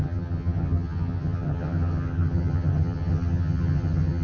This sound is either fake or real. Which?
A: fake